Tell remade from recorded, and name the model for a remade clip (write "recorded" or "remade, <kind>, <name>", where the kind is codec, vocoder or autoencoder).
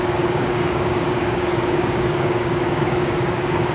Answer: remade, codec, DAC